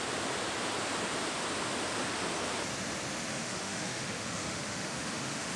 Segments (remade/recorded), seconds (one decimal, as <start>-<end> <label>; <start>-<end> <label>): 0.0-3.3 recorded; 3.3-5.6 remade